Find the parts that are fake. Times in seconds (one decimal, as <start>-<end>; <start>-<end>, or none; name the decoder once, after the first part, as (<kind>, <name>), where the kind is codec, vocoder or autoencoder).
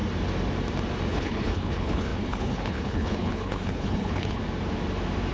1.1-4.4 (codec, HILCodec)